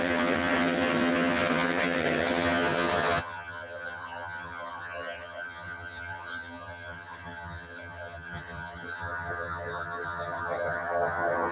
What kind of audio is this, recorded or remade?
remade